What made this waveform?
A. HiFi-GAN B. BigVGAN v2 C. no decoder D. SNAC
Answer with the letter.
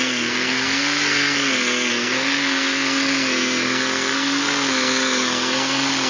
D